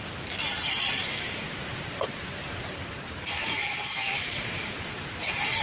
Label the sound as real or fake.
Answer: fake